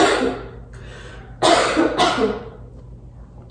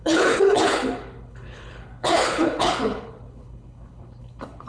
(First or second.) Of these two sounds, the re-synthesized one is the second